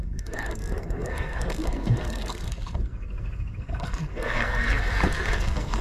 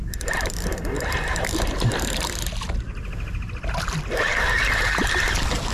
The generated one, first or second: first